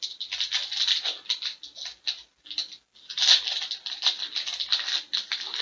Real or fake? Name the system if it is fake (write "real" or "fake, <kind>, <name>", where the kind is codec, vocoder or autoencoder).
real